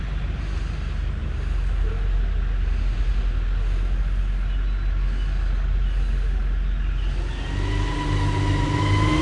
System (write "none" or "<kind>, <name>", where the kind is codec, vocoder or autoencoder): none